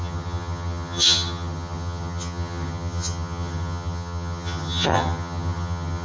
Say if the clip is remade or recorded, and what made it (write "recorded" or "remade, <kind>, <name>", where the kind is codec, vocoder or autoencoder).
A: remade, vocoder, HiFi-GAN